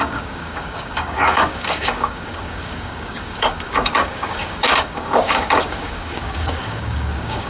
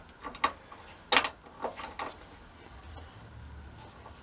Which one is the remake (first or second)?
first